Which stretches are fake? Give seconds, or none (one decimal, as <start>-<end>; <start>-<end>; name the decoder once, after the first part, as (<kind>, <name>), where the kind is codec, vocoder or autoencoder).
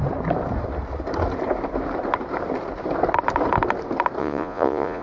4.2-5.0 (vocoder, Vocos)